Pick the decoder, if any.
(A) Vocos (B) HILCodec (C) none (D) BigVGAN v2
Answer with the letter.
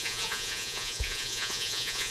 A